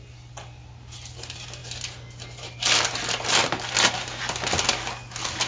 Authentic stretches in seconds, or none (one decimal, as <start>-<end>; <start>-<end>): 0.0-5.5